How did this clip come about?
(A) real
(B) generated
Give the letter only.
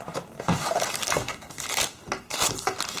A